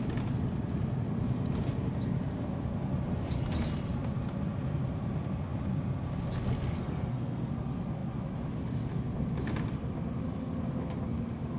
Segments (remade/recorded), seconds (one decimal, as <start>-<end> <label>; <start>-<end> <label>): 0.0-6.8 recorded; 6.8-7.5 remade; 7.5-11.6 recorded